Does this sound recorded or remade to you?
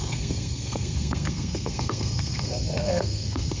remade